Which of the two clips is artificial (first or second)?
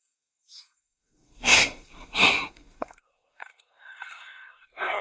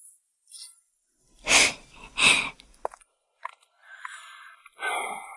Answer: first